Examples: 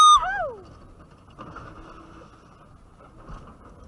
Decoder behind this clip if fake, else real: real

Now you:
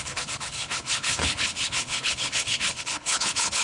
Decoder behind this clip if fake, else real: fake, codec, HILCodec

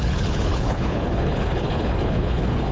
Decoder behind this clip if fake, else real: fake, codec, HILCodec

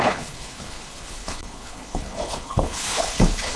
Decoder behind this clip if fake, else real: fake, codec, HILCodec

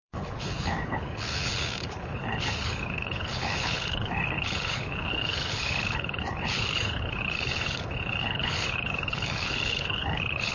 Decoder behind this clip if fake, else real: fake, codec, HILCodec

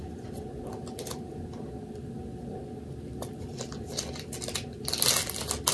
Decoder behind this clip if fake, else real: real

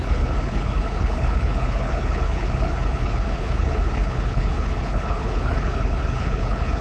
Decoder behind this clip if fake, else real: fake, codec, HILCodec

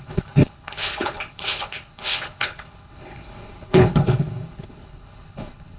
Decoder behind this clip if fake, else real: fake, codec, HILCodec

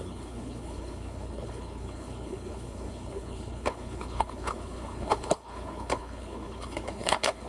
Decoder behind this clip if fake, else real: fake, codec, HILCodec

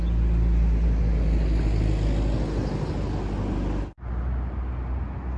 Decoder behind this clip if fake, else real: real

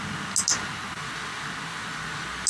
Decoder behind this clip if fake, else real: real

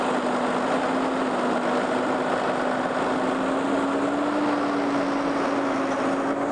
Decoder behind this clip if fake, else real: real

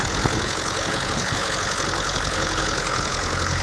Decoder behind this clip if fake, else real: fake, codec, HILCodec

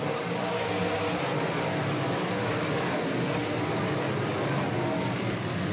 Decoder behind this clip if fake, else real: real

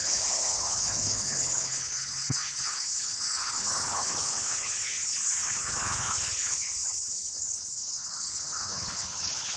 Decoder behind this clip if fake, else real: fake, codec, HILCodec